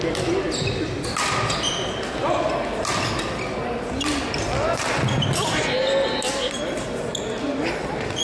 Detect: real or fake real